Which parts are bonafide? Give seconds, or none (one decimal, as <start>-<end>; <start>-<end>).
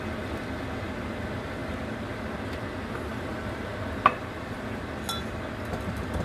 0.0-6.2